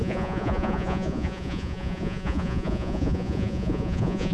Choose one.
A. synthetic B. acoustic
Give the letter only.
A